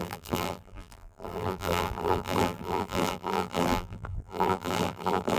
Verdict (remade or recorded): remade